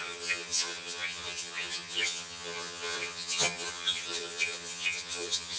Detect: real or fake fake